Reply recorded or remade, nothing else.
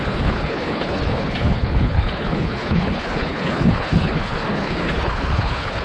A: remade